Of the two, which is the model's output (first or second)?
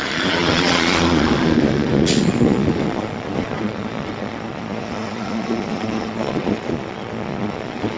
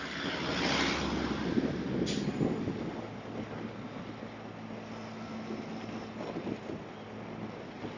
first